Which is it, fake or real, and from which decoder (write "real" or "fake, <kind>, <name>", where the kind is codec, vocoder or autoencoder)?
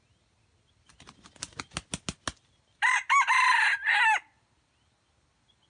real